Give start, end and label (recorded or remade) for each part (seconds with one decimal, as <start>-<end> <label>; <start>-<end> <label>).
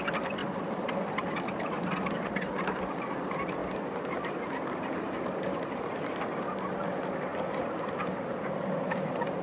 0.0-9.4 recorded